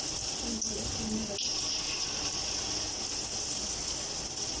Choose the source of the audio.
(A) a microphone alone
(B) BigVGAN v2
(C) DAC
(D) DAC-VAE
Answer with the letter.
A